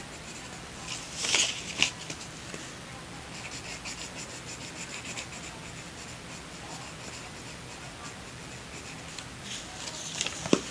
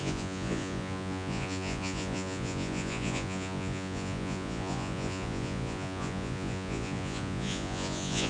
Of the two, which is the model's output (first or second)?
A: second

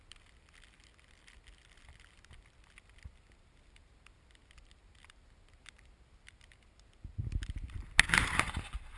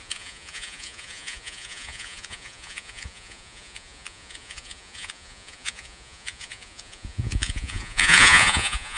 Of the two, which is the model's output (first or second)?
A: second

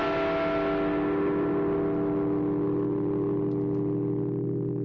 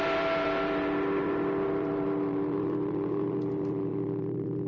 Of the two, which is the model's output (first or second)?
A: second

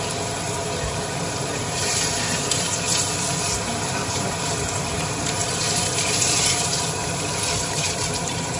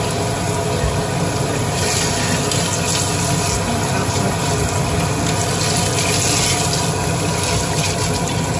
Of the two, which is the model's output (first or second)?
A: first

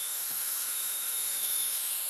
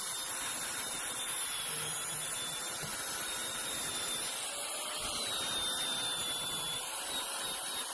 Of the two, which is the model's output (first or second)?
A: first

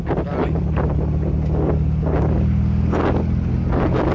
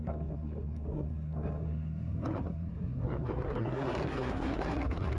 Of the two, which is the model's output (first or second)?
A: second